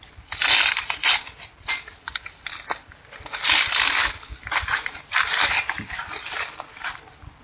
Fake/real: real